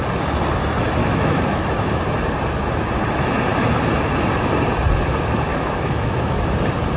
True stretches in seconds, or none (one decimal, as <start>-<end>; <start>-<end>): 0.0-1.0; 2.0-5.5; 6.5-7.0